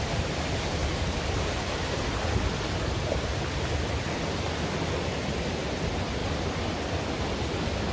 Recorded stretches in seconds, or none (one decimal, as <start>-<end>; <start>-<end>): 0.0-7.9